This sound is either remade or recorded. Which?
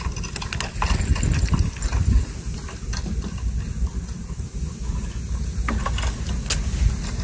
recorded